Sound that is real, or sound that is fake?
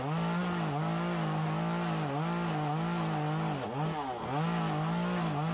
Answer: real